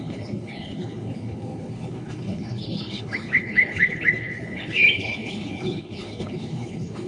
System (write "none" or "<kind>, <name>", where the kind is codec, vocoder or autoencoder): codec, HILCodec